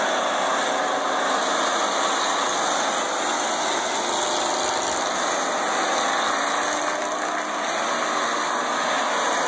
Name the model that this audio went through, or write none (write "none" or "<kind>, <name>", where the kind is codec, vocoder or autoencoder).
none